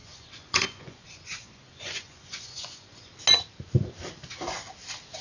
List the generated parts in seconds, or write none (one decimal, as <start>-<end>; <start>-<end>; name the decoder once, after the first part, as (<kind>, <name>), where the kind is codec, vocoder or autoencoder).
0.0-3.1 (vocoder, Vocos)